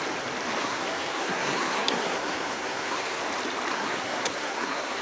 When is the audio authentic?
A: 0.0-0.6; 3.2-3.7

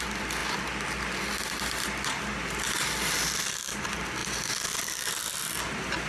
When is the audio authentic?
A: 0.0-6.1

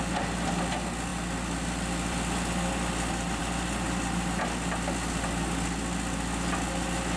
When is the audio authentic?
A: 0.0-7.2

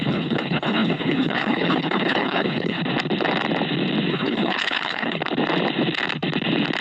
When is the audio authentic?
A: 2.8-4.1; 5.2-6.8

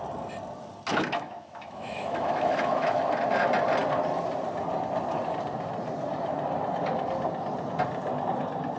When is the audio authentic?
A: 0.0-0.9; 3.0-8.8